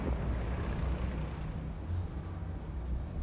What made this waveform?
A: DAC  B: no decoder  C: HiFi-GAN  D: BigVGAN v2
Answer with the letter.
B